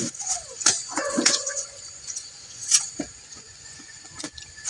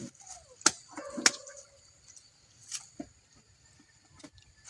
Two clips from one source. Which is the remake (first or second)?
first